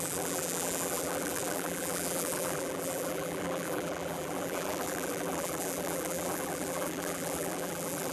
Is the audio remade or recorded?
remade